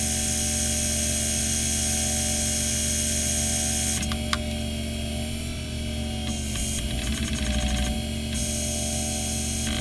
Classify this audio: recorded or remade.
recorded